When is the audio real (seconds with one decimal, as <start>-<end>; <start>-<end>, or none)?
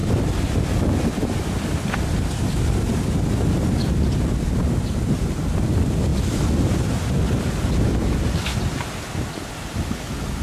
0.0-10.4